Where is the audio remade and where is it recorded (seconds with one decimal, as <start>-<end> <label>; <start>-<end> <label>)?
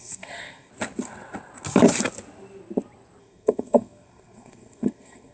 0.0-0.7 remade; 0.7-3.2 recorded; 3.2-5.3 remade